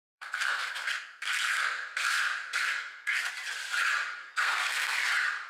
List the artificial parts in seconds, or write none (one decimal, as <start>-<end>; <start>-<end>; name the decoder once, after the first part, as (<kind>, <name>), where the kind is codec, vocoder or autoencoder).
0.0-3.3 (codec, SNAC); 4.2-5.0